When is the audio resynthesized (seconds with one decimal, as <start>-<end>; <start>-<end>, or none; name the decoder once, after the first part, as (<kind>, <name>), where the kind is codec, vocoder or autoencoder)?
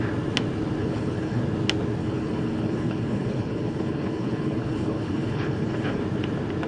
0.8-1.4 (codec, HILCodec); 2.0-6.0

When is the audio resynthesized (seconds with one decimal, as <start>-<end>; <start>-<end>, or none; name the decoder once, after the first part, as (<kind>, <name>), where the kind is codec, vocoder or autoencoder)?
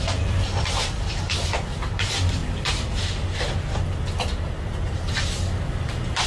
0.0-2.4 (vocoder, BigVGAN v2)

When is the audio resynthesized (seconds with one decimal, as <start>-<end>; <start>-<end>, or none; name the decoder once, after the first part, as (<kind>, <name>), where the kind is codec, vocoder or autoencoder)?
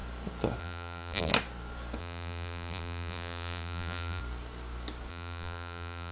0.6-1.3 (vocoder, BigVGAN v2); 2.0-4.2; 5.1-6.1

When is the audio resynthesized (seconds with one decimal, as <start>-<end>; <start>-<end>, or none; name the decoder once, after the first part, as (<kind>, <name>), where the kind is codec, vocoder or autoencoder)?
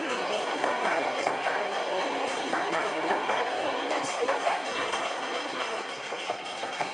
0.0-6.9 (codec, SNAC)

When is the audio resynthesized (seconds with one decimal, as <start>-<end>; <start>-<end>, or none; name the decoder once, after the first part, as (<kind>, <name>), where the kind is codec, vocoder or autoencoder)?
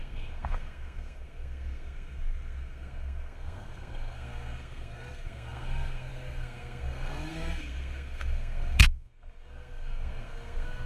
0.0-10.9 (codec, SNAC)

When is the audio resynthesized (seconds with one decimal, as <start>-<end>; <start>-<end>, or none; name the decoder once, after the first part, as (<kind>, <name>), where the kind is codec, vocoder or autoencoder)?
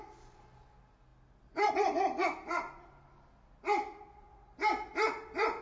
none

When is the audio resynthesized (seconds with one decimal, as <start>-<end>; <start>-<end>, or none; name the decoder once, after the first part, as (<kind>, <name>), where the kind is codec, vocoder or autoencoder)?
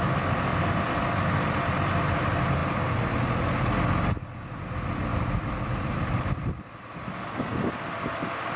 0.5-1.3 (vocoder, BigVGAN v2); 5.1-8.6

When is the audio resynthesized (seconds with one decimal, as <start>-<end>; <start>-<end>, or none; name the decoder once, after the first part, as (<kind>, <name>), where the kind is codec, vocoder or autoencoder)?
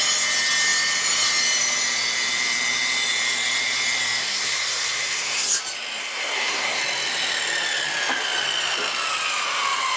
4.2-5.6 (codec, SNAC); 6.0-6.8